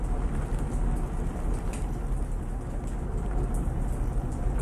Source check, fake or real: real